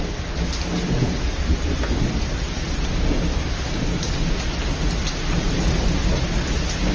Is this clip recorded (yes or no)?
yes